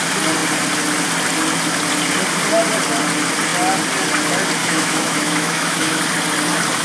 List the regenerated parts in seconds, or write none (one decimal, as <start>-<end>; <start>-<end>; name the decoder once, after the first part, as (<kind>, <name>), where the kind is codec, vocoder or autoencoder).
4.6-6.0 (autoencoder, DAC-VAE)